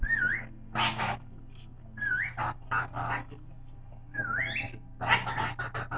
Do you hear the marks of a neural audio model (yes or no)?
no